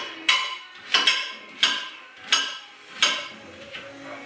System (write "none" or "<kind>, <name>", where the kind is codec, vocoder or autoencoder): none